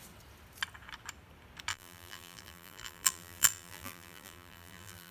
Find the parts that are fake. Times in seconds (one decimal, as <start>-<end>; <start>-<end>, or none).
1.7-5.1